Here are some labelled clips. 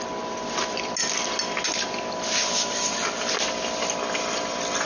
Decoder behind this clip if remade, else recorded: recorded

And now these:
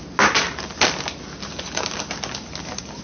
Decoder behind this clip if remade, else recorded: recorded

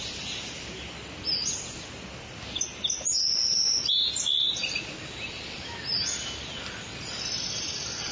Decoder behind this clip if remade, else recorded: recorded